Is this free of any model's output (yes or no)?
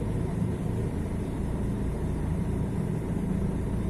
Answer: no